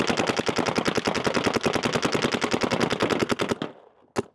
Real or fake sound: real